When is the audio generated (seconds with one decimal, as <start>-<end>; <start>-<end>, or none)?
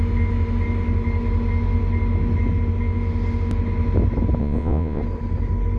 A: 4.4-5.0